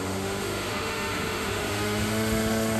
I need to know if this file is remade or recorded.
remade